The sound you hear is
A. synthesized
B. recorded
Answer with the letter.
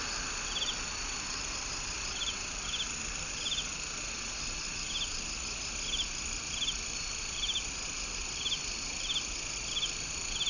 B